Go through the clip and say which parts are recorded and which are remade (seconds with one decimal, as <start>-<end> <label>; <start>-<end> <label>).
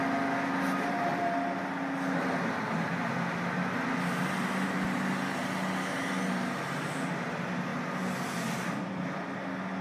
0.0-9.8 recorded